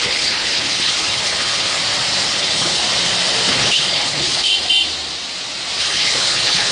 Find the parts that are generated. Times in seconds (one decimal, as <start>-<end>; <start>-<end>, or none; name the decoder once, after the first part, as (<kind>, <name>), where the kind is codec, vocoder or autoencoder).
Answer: 0.0-1.8 (codec, HILCodec); 2.3-2.8; 3.5-4.5; 5.8-6.7